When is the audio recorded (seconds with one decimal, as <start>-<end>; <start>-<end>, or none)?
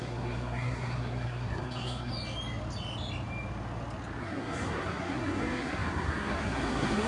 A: 2.1-4.2